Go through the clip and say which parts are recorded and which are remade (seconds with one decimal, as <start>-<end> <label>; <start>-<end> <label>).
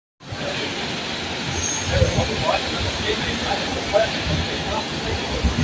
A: 0.0-3.7 recorded; 3.7-4.3 remade; 4.3-5.6 recorded